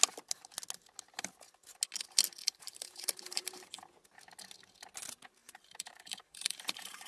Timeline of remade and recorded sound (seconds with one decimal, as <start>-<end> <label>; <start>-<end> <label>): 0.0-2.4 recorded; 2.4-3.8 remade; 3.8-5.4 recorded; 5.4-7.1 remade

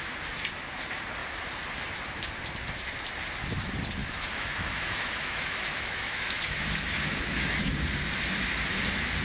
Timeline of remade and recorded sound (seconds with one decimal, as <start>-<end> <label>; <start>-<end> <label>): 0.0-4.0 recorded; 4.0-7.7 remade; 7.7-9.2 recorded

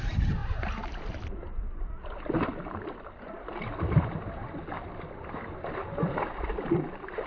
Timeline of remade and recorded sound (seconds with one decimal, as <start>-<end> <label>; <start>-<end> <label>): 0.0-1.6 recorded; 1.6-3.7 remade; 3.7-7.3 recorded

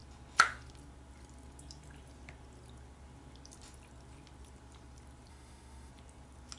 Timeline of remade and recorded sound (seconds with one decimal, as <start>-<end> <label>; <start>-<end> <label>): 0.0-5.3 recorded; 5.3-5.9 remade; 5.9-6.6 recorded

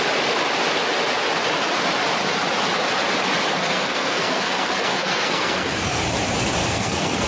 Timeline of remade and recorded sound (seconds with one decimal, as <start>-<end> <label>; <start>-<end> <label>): 0.0-3.6 recorded; 3.6-6.0 remade; 6.0-6.6 recorded; 6.6-7.3 remade